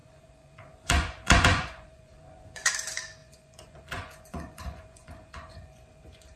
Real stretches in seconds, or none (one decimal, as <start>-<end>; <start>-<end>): 2.7-3.2